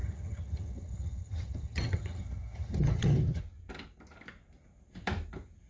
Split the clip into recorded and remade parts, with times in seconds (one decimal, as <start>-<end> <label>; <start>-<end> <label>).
0.0-3.4 remade; 3.4-5.7 recorded